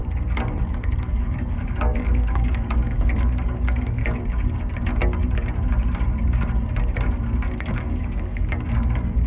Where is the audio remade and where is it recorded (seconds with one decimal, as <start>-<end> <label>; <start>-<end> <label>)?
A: 0.0-0.7 recorded; 0.7-4.0 remade; 4.0-7.7 recorded; 7.7-9.3 remade

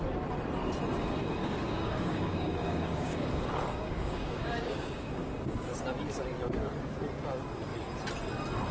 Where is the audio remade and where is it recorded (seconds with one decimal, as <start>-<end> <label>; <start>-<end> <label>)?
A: 0.0-1.4 recorded; 1.4-5.8 remade; 5.8-8.7 recorded

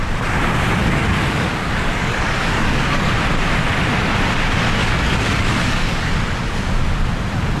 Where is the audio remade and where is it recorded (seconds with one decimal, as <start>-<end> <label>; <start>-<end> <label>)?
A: 0.0-0.8 recorded; 0.8-3.1 remade; 3.1-4.8 recorded; 4.8-6.1 remade; 6.1-7.6 recorded